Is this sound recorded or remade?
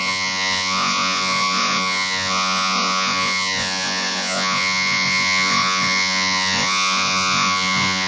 remade